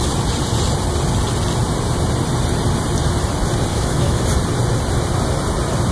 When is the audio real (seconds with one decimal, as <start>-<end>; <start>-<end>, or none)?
0.0-3.7; 4.2-5.9